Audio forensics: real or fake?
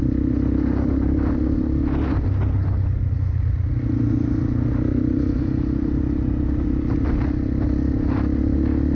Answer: real